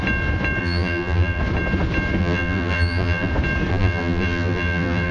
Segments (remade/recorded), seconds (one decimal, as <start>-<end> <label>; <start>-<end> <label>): 0.0-0.6 recorded; 0.6-1.4 remade; 1.4-2.2 recorded; 2.2-3.3 remade; 3.3-3.7 recorded; 3.7-5.1 remade